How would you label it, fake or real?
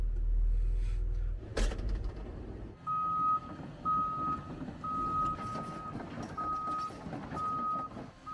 real